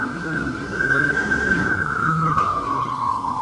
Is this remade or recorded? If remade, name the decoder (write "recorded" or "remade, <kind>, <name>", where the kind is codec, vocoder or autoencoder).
remade, codec, SNAC